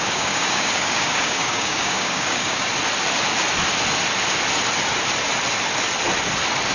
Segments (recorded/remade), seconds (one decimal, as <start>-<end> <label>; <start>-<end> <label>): 0.0-2.7 remade; 2.7-6.7 recorded

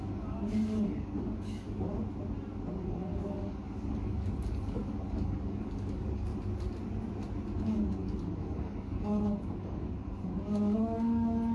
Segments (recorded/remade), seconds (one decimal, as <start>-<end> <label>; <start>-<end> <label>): 0.0-1.9 remade; 1.9-2.7 recorded; 2.7-6.3 remade; 6.3-7.6 recorded; 7.6-11.5 remade

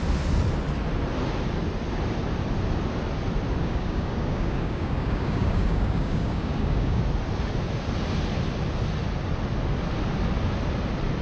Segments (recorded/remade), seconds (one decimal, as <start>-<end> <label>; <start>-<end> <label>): 0.0-3.6 recorded; 3.6-7.0 remade; 7.0-11.2 recorded